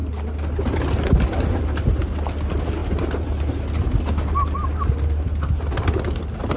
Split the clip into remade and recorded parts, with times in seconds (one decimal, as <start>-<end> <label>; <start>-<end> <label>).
0.0-6.6 recorded

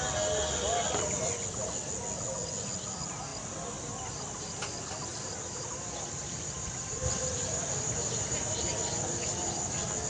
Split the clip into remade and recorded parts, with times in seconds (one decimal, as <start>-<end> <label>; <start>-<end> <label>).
0.0-5.1 recorded; 5.1-9.7 remade; 9.7-10.1 recorded